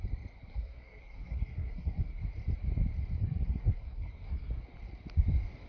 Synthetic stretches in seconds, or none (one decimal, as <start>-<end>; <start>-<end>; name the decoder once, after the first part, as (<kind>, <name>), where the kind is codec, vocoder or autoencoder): 0.5-2.2 (codec, SNAC); 3.2-4.5